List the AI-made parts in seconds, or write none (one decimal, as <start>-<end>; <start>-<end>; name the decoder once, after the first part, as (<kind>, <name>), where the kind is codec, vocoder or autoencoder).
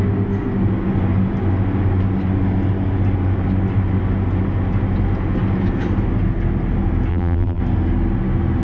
7.1-7.6 (vocoder, BigVGAN v2)